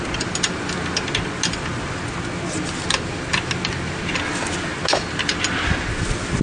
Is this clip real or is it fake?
real